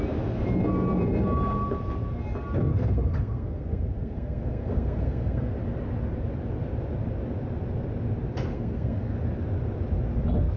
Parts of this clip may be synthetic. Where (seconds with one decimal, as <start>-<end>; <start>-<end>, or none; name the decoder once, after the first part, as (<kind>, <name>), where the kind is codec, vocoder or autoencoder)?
2.7-5.5 (codec, SNAC); 8.5-9.1